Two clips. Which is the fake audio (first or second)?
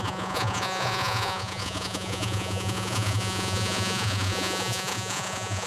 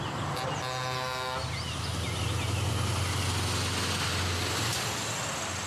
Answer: first